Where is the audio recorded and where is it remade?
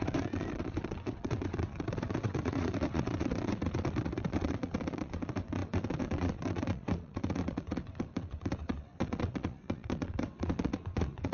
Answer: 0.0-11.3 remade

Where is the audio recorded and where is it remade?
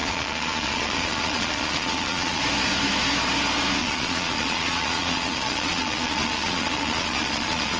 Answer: 0.0-2.4 remade; 2.4-3.8 recorded; 3.8-7.8 remade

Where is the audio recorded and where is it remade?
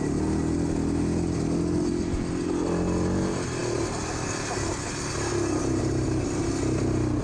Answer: 0.0-7.2 recorded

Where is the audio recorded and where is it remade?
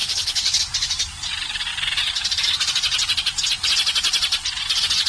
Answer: 0.0-0.6 remade; 0.6-5.1 recorded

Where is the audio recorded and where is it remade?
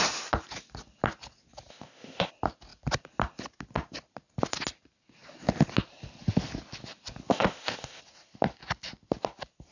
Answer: 0.0-1.7 recorded; 1.7-2.3 remade; 2.3-7.3 recorded; 7.3-8.0 remade; 8.0-9.7 recorded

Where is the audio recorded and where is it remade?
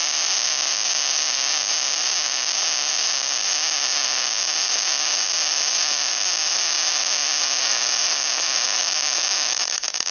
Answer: 0.0-8.8 recorded; 8.8-9.6 remade; 9.6-10.1 recorded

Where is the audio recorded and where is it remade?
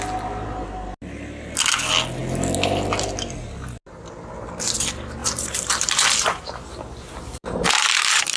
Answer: 0.0-5.2 recorded; 5.2-8.4 remade